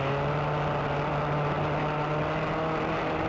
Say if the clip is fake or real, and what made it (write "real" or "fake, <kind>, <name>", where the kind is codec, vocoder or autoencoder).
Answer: real